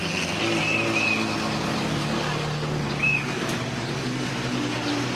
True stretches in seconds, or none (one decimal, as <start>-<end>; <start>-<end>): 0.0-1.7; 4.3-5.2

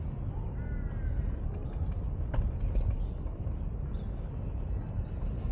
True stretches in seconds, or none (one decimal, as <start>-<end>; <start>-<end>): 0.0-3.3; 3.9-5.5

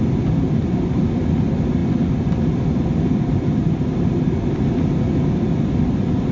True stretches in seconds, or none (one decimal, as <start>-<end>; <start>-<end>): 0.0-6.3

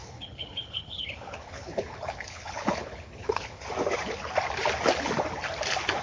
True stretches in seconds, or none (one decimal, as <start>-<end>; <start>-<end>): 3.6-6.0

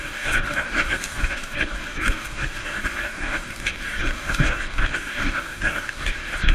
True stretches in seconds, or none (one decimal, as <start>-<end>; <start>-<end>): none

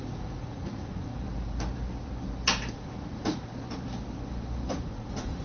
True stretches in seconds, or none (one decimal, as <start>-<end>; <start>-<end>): 1.1-2.7; 3.5-4.7

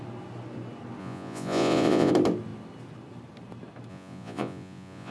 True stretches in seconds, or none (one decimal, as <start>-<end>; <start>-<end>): 0.0-1.0; 2.1-3.9

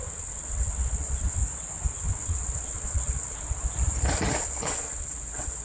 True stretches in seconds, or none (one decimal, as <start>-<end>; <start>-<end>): 1.4-2.0; 3.7-4.4